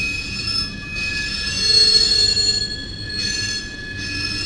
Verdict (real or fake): real